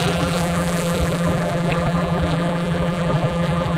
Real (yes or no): no